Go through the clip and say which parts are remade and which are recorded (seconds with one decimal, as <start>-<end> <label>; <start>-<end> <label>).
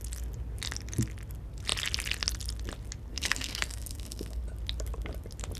0.0-3.1 recorded; 3.1-4.4 remade; 4.4-5.6 recorded